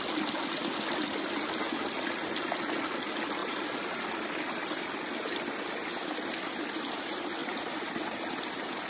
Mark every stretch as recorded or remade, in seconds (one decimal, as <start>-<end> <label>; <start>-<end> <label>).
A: 0.0-3.4 recorded; 3.4-4.0 remade; 4.0-7.4 recorded; 7.4-8.9 remade